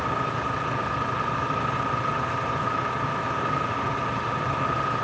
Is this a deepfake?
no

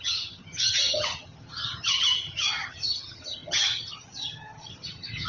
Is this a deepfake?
yes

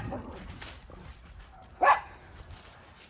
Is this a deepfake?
no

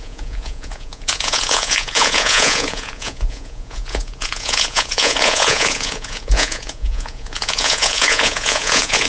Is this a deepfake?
yes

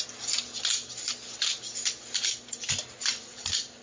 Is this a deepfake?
no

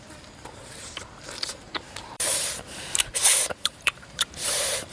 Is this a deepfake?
yes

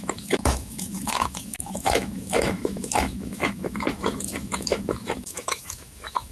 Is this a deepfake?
yes